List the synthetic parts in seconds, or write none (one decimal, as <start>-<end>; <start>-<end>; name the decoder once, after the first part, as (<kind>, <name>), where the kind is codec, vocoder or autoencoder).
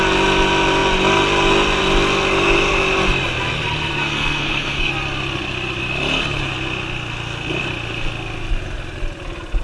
4.0-4.9 (codec, SNAC)